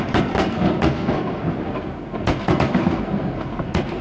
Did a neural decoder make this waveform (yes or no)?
yes